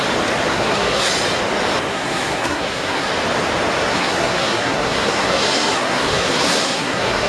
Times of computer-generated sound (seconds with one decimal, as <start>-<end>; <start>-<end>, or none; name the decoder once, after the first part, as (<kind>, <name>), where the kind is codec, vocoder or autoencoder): 0.5-1.1 (codec, SNAC); 1.9-3.1; 3.9-7.3